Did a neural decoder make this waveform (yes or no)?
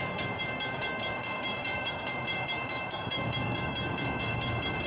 yes